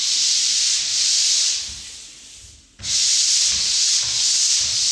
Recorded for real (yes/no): yes